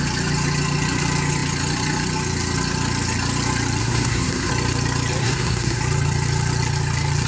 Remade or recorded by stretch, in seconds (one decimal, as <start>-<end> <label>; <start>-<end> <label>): 0.0-3.8 recorded; 3.8-4.5 remade; 4.5-5.2 recorded; 5.2-5.8 remade; 5.8-7.3 recorded